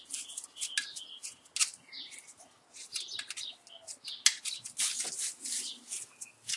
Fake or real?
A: real